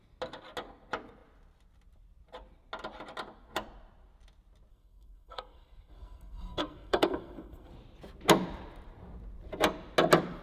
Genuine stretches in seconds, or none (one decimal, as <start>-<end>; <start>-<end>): 0.0-4.7; 7.7-10.4